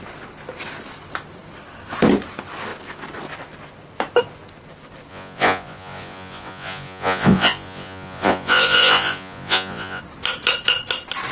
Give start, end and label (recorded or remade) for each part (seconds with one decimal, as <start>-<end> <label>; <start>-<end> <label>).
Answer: 0.0-5.1 recorded; 5.1-10.0 remade; 10.0-11.3 recorded

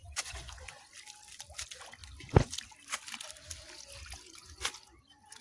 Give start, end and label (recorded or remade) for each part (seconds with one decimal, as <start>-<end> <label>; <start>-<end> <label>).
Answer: 0.0-0.9 remade; 0.9-5.4 recorded